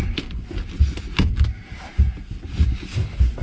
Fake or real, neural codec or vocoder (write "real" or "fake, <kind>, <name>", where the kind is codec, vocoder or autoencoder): real